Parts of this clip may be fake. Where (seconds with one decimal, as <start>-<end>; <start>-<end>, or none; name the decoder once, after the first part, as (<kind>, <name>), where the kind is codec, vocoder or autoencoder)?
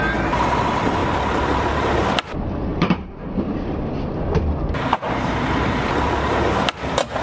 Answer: 1.0-2.0 (vocoder, BigVGAN v2); 2.7-3.8